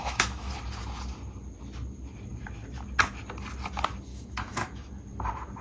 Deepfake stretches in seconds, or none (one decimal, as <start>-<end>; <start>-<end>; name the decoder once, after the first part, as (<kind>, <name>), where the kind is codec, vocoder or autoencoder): 0.0-0.5 (autoencoder, DAC-VAE); 4.1-4.9